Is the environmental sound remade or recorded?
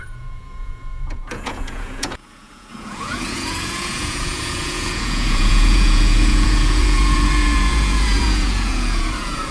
remade